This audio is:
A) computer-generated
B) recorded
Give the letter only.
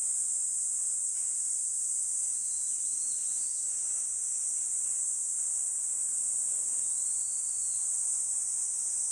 B